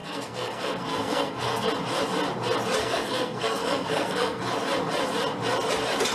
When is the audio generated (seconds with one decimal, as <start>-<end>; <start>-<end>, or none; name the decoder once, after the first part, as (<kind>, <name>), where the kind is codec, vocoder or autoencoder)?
0.0-1.7 (codec, SNAC); 2.8-4.4